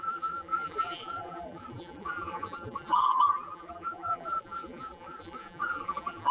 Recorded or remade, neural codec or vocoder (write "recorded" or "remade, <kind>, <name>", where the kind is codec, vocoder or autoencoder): remade, vocoder, BigVGAN v2